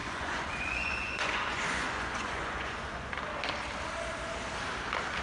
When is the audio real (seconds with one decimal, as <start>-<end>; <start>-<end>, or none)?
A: 3.1-5.2